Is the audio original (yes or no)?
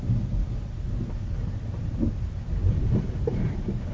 yes